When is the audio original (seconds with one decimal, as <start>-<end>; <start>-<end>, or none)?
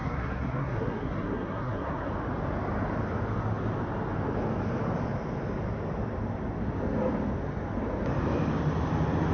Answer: 2.1-9.3